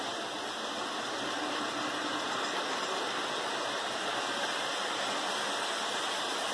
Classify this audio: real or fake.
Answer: real